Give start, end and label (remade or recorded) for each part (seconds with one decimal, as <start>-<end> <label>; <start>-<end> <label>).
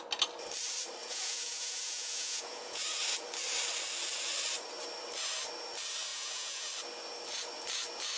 0.0-1.0 recorded; 1.0-2.8 remade; 2.8-6.1 recorded; 6.1-6.7 remade; 6.7-8.2 recorded